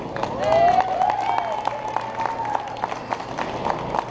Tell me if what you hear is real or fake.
real